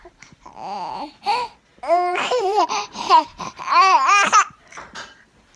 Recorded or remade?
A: remade